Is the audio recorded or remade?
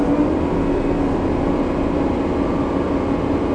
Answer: recorded